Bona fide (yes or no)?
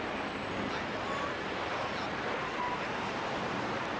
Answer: yes